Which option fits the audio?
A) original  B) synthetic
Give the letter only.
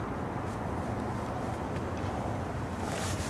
A